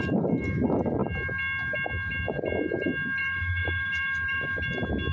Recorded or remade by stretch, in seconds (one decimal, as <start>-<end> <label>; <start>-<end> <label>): 0.0-3.2 recorded; 3.2-4.6 remade; 4.6-5.1 recorded